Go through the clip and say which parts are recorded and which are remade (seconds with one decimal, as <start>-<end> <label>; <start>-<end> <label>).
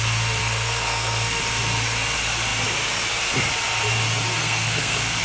0.0-0.4 recorded; 0.4-1.4 remade; 1.4-4.4 recorded; 4.4-5.2 remade